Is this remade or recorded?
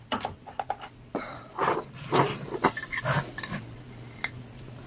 recorded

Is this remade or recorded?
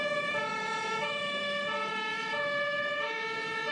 remade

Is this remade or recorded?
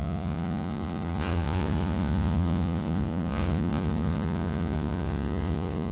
remade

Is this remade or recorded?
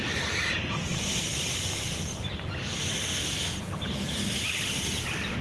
recorded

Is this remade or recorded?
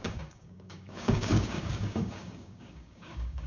remade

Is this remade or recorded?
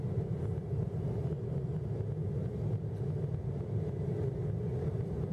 recorded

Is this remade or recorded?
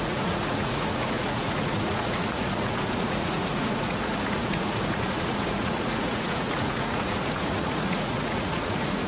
remade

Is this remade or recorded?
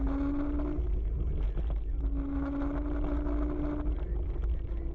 recorded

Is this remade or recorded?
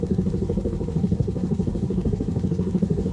remade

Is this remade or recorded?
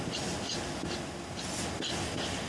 recorded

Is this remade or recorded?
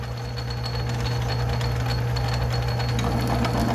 recorded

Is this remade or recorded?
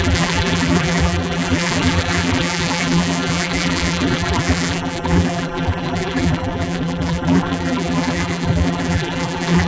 remade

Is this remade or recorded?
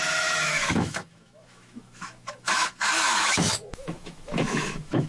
remade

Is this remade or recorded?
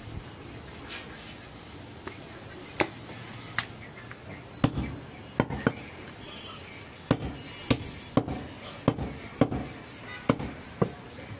recorded